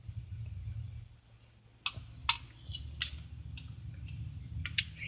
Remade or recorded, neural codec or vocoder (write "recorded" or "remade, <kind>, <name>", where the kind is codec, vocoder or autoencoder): recorded